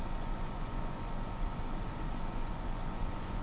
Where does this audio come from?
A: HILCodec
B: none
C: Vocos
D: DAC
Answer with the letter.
C